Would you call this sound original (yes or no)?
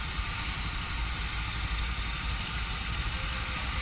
yes